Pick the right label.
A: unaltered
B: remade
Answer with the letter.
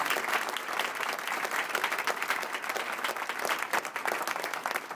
A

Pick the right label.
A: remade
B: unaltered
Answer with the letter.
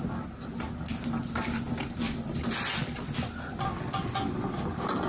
B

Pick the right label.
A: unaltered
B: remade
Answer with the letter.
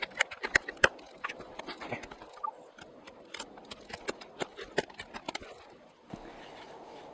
A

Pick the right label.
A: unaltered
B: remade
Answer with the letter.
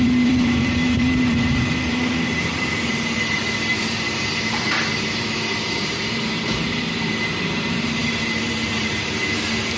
B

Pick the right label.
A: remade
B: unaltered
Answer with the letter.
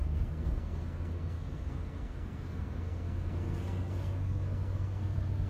A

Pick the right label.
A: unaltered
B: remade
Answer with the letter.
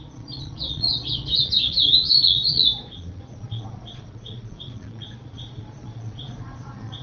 B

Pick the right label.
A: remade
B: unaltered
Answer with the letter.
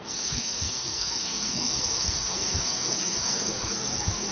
A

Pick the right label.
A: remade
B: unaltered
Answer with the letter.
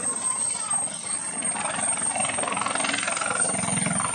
B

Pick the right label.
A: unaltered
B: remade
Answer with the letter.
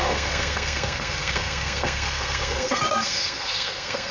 B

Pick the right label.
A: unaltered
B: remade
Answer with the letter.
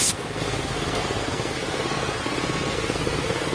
B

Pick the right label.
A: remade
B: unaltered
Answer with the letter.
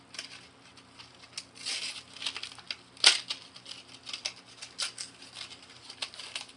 B